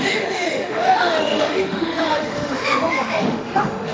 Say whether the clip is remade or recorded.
remade